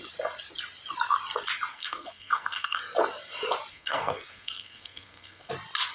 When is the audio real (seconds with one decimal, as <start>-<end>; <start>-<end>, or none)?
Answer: 0.0-1.7; 2.8-3.7; 5.5-5.9